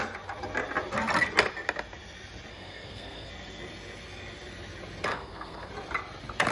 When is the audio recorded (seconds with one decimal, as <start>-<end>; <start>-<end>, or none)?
0.0-2.5; 3.3-5.1; 5.7-6.5

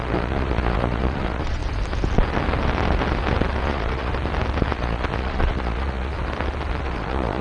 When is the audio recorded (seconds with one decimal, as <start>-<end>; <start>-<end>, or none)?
1.6-3.6; 4.1-4.7; 6.1-6.8